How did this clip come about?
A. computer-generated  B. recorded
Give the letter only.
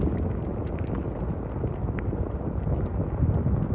B